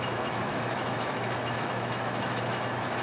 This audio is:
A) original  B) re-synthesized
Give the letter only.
B